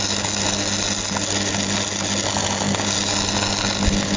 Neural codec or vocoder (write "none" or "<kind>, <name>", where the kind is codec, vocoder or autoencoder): none